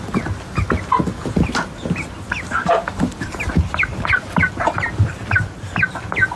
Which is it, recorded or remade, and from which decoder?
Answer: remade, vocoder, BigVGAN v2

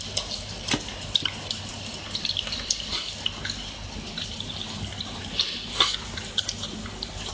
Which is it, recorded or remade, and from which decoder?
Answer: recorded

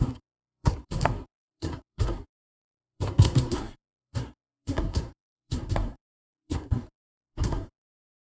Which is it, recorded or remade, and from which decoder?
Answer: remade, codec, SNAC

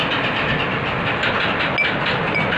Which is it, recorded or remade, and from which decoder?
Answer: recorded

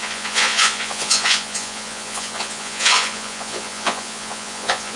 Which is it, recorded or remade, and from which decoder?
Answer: remade, vocoder, Vocos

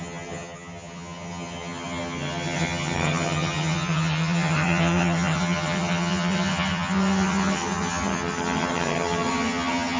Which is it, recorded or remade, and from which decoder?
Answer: remade, vocoder, HiFi-GAN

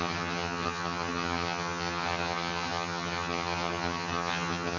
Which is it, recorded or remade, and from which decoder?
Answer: remade, vocoder, HiFi-GAN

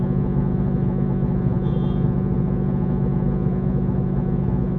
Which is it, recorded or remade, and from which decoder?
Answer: remade, vocoder, Vocos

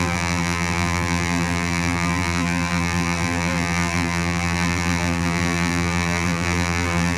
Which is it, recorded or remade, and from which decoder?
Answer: remade, vocoder, BigVGAN v2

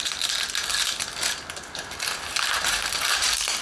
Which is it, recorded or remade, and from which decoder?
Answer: recorded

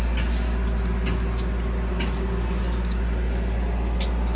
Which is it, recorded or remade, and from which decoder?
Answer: recorded